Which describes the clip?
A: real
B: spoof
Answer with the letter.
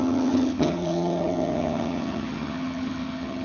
B